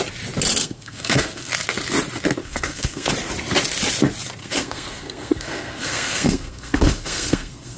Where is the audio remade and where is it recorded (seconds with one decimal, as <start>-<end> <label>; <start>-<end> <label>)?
0.0-0.6 recorded; 0.6-1.5 remade; 1.5-2.4 recorded; 2.4-3.1 remade; 3.1-4.4 recorded; 4.4-7.8 remade